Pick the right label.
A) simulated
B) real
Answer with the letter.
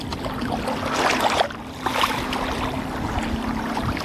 B